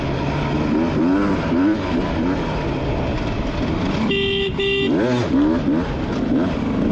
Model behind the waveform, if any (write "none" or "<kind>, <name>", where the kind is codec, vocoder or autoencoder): none